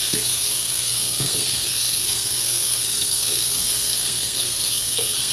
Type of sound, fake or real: fake